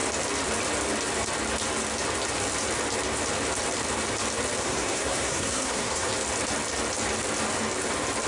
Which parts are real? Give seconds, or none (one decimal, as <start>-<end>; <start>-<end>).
0.0-4.6; 6.1-8.3